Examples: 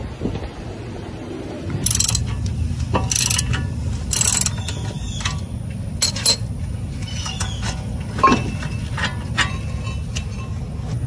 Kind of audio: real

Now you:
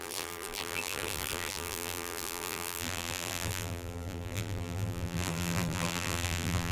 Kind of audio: fake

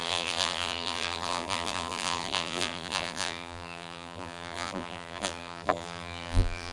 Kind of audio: fake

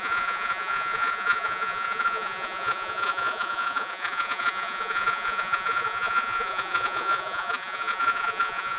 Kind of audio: fake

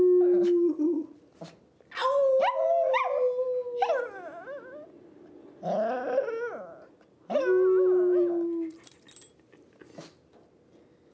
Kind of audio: real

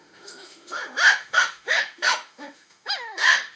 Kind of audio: fake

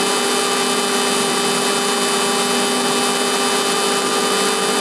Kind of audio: real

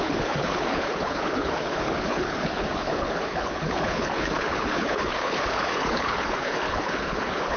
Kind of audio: fake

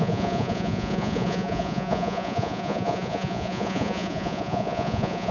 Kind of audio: fake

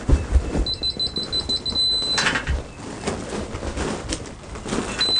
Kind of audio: real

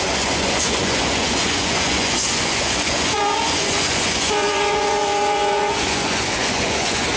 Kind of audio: fake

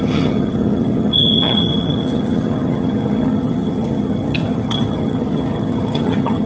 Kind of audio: fake